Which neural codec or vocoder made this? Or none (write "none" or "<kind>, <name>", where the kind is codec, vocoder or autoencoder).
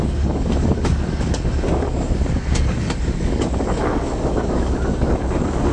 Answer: codec, DAC